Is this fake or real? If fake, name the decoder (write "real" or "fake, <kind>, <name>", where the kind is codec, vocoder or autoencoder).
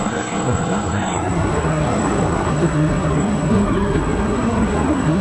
fake, codec, SNAC